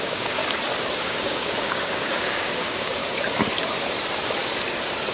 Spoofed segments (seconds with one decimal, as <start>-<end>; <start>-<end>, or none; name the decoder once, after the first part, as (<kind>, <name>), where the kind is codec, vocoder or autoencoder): 0.0-0.4 (codec, DAC); 1.0-3.0